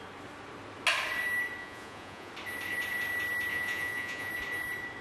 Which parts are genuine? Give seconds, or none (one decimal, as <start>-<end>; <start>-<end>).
0.0-1.6; 2.3-3.5; 4.3-5.0